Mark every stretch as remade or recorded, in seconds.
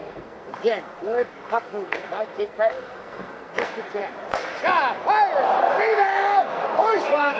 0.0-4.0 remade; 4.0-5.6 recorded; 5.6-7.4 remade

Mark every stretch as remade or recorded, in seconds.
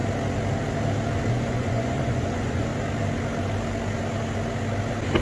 0.0-1.3 recorded; 1.3-2.7 remade; 2.7-5.2 recorded